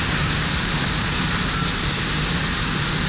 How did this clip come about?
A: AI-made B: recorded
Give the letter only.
B